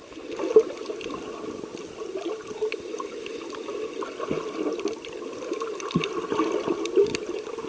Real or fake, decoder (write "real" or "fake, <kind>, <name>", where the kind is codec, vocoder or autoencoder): real